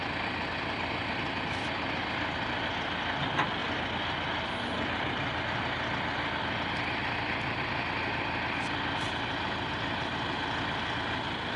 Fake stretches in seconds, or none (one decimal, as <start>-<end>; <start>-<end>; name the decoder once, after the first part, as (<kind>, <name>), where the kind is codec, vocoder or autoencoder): none